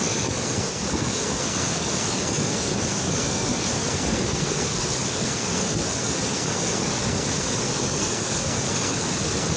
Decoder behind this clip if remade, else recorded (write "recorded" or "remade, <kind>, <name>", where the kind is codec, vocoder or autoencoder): remade, codec, SNAC